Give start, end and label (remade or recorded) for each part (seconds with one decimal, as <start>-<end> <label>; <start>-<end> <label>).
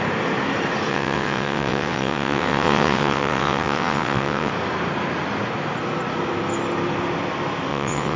0.0-0.9 recorded; 0.9-4.5 remade; 4.5-7.7 recorded; 7.7-8.2 remade